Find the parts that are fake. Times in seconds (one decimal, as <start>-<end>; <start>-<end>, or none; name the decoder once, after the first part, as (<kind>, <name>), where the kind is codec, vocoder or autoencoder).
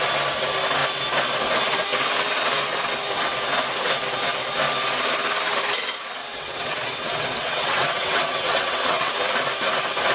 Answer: 6.2-9.1 (vocoder, WaveNeXt)